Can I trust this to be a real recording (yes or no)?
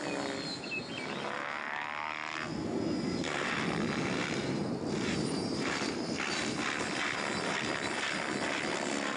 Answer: yes